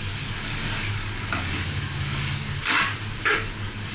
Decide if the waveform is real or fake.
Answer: fake